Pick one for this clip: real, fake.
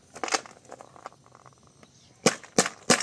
real